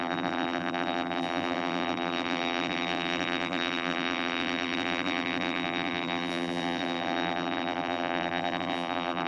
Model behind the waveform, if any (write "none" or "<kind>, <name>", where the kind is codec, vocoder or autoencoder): vocoder, BigVGAN v2